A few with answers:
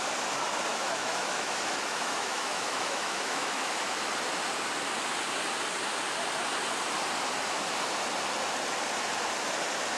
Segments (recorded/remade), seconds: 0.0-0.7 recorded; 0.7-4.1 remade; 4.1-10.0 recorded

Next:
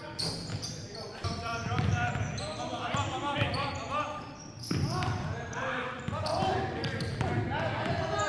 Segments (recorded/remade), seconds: 0.0-0.6 recorded; 0.6-1.9 remade; 1.9-2.7 recorded; 2.7-6.9 remade; 6.9-8.3 recorded